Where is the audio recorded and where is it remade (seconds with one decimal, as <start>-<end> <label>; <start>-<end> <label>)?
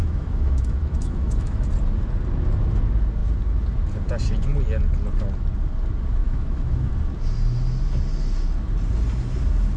0.0-1.7 remade; 1.7-6.2 recorded; 6.2-6.9 remade; 6.9-9.8 recorded